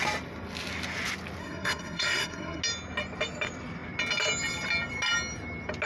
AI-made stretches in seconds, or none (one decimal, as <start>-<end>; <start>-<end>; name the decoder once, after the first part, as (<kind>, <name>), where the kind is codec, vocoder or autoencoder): 1.4-2.6 (codec, SNAC)